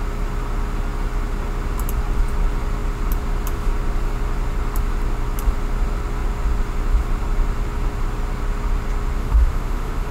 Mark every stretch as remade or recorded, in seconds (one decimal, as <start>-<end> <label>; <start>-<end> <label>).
0.0-9.2 recorded; 9.2-10.1 remade